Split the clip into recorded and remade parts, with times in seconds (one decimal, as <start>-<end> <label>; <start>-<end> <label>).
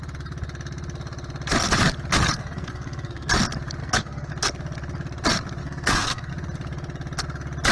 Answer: 0.0-2.3 recorded; 2.3-3.3 remade; 3.3-3.8 recorded; 3.8-4.3 remade; 4.3-5.6 recorded; 5.6-6.3 remade; 6.3-7.7 recorded